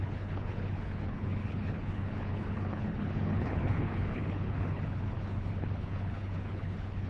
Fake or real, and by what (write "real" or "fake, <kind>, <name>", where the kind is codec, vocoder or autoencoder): fake, codec, HILCodec